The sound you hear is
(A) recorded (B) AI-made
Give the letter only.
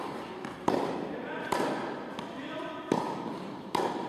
B